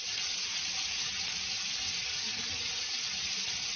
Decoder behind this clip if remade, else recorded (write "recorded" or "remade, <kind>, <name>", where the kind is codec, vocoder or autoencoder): recorded